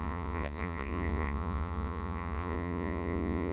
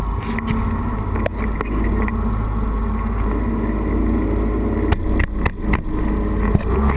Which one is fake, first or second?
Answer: first